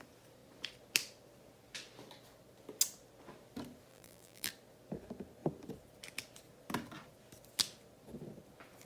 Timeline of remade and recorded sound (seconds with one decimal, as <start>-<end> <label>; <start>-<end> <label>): 0.0-3.9 recorded; 3.9-4.5 remade; 4.5-8.9 recorded